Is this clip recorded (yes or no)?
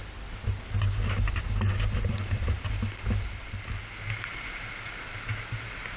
yes